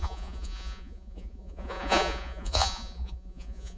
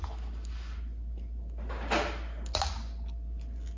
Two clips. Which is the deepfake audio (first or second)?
first